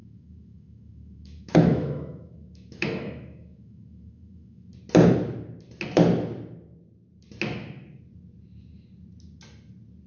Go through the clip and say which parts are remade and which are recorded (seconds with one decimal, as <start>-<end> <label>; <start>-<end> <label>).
0.0-4.7 remade; 4.7-10.1 recorded